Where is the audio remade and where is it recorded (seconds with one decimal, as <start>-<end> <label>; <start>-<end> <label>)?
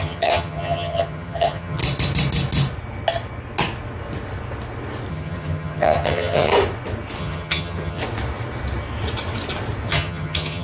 0.0-1.8 remade; 1.8-5.1 recorded; 5.1-6.5 remade; 6.5-7.2 recorded; 7.2-8.0 remade; 8.0-9.9 recorded; 9.9-10.6 remade